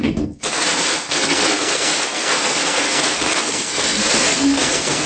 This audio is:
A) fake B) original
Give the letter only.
A